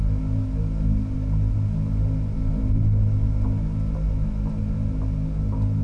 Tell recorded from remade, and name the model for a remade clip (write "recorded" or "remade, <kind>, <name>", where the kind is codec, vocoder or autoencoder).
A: recorded